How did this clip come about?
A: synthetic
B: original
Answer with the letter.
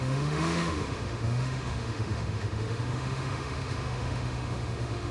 A